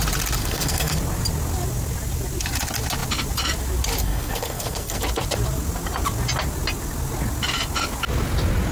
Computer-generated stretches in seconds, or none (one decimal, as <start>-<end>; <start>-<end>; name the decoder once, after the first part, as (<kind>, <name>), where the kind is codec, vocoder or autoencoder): 0.4-1.0 (codec, SNAC); 4.0-5.0